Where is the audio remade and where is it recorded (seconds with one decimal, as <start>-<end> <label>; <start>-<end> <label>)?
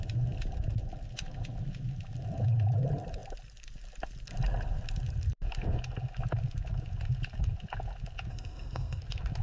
0.0-8.3 recorded; 8.3-9.0 remade; 9.0-9.4 recorded